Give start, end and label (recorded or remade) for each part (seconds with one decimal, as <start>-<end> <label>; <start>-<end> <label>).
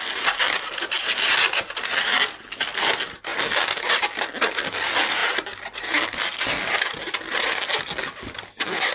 0.0-8.9 recorded